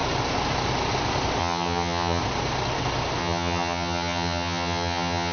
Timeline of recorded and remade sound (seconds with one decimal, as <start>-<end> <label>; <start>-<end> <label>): 0.0-1.4 recorded; 1.4-2.2 remade; 2.2-3.2 recorded; 3.2-5.3 remade